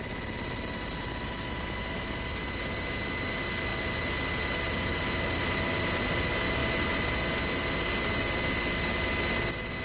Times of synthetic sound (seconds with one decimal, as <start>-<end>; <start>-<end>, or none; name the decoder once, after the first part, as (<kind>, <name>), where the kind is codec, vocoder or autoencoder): none